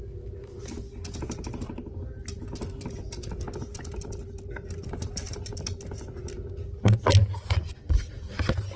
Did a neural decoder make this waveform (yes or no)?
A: no